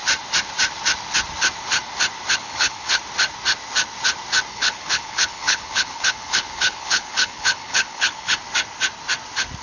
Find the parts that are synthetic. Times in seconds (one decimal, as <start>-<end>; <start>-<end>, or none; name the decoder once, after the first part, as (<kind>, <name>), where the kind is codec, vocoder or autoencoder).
2.4-3.0 (codec, HILCodec); 4.5-8.4